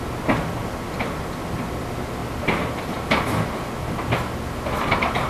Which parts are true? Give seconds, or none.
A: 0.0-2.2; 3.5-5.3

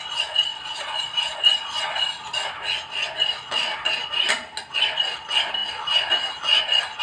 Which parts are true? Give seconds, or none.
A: 0.0-7.0

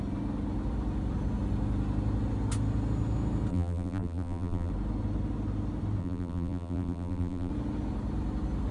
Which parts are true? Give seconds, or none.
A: 0.0-3.5; 4.7-6.0; 7.5-8.7

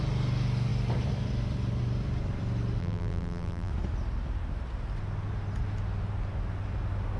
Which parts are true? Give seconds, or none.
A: 0.0-2.8; 3.7-7.2

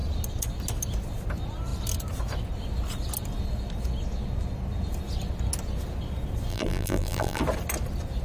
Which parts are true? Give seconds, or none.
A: 0.0-6.5; 7.4-8.2

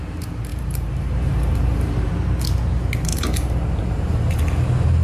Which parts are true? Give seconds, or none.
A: 0.0-0.5; 2.1-3.1; 4.4-5.0

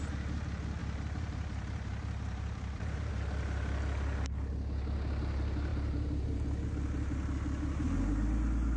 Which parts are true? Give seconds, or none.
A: 0.0-0.8; 3.1-5.7; 6.7-8.8